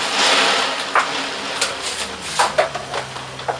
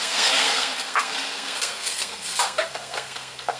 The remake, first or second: second